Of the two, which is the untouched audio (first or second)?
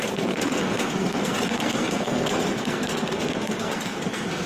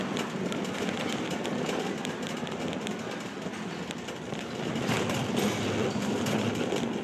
second